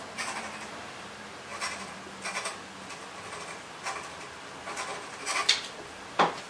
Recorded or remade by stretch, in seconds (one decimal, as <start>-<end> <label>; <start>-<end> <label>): 0.0-6.5 recorded